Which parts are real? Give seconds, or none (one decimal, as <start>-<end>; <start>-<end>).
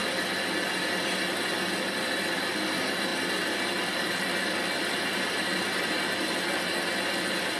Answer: 0.0-7.6